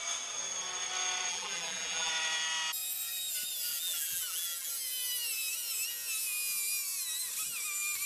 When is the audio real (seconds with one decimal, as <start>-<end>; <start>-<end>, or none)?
0.0-1.3; 2.1-3.7; 4.7-8.1